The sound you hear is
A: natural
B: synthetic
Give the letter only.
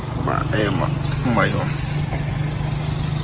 A